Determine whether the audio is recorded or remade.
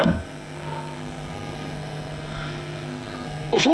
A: remade